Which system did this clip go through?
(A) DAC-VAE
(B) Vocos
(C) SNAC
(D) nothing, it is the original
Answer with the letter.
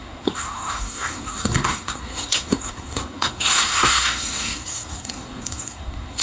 C